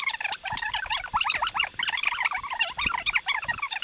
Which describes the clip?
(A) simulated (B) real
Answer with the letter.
B